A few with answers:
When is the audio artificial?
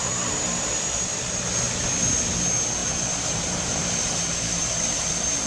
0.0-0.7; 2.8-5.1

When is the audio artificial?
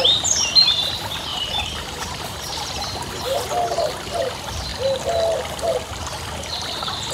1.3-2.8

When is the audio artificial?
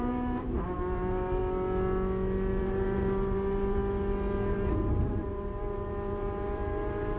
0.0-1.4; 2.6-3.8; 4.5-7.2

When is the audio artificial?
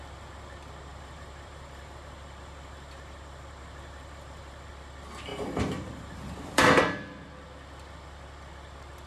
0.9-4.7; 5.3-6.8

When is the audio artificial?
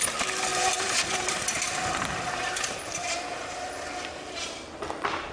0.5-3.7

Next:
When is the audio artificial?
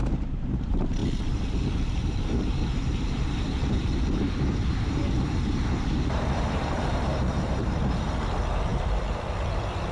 0.0-9.9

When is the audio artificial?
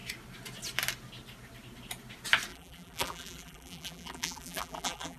2.5-5.2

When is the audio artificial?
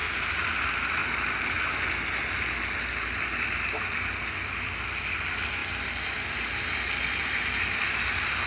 0.0-0.5